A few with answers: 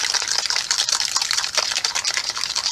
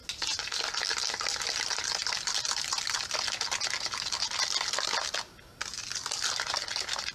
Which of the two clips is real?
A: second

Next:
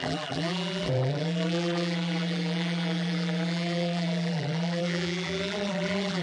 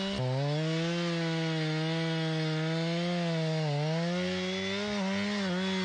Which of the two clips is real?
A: second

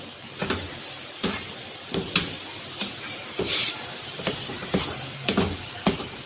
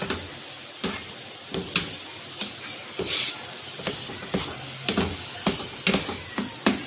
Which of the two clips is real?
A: second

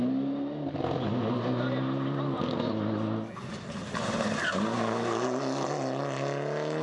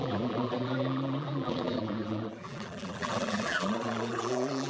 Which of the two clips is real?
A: first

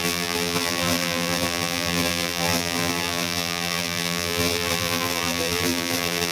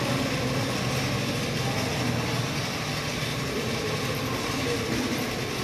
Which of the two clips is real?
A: second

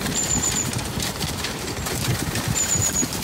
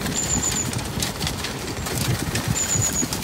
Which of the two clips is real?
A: second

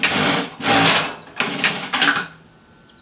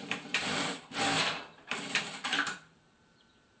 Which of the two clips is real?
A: first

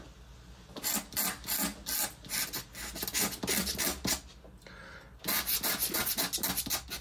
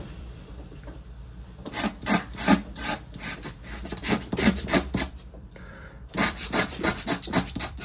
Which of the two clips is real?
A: first